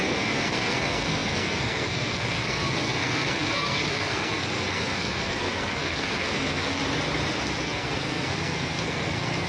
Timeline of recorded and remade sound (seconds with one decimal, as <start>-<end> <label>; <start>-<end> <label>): 0.0-6.8 remade; 6.8-7.6 recorded; 7.6-9.5 remade